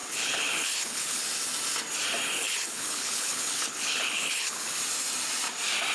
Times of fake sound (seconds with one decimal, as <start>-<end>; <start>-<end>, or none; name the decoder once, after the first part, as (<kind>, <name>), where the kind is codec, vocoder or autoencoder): 0.0-1.2 (codec, HILCodec); 2.4-4.8